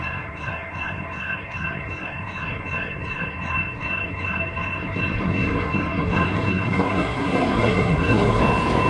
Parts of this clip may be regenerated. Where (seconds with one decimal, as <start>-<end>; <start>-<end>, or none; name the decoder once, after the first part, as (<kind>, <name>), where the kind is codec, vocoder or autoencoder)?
0.0-8.4 (codec, SNAC)